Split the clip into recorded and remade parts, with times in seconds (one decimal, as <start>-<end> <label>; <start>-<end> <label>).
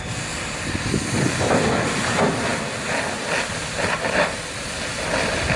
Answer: 0.0-5.6 recorded